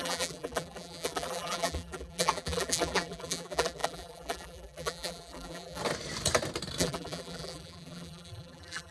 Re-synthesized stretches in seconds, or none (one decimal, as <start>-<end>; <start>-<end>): 0.0-5.8; 6.8-8.9